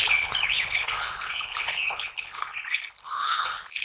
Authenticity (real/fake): fake